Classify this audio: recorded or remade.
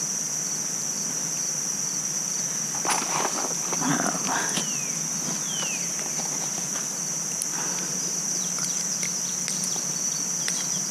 recorded